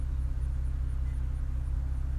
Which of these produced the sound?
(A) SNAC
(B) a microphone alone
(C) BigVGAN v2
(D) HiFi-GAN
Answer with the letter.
B